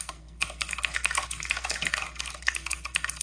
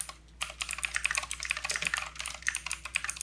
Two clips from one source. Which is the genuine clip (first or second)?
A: second